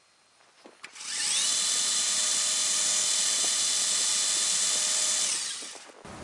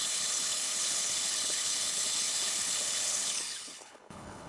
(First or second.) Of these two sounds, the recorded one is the first